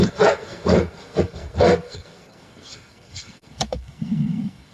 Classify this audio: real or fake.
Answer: fake